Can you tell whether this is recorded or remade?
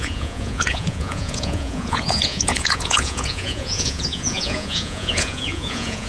remade